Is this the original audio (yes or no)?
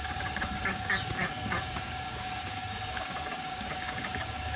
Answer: no